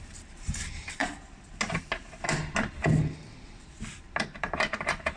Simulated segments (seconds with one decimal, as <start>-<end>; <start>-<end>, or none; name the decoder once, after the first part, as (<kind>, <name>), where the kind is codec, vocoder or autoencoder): 0.0-1.0 (vocoder, BigVGAN v2); 4.1-5.2